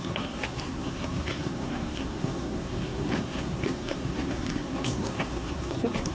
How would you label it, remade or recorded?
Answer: remade